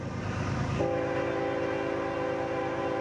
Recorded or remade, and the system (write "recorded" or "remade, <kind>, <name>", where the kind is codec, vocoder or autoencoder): recorded